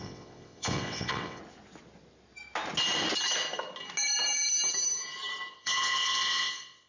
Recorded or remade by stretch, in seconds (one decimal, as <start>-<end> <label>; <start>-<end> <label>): 0.0-1.4 remade; 1.4-5.5 recorded; 5.5-6.9 remade